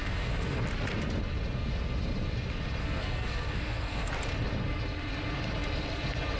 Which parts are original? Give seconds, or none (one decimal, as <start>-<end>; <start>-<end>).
0.6-2.8; 4.1-6.4